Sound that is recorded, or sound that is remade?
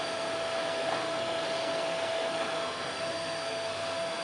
remade